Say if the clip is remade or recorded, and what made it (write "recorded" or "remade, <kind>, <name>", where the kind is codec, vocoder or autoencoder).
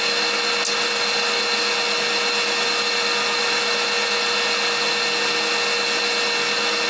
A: recorded